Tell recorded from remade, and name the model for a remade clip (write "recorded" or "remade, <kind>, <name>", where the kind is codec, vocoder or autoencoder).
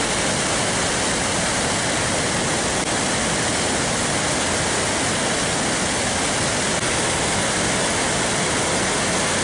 recorded